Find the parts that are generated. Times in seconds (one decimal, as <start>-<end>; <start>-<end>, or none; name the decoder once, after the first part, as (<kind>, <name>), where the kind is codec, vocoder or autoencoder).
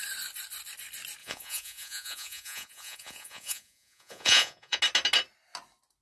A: 1.2-4.8 (vocoder, Vocos)